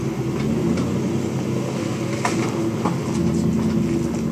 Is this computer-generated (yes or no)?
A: no